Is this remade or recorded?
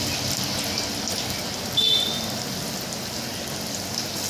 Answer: recorded